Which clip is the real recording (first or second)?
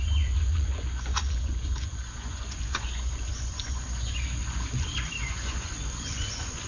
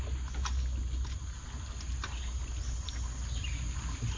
second